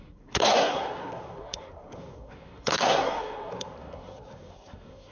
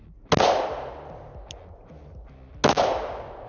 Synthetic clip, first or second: first